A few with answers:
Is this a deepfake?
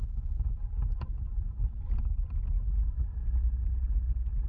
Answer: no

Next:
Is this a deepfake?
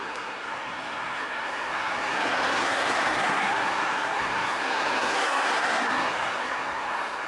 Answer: yes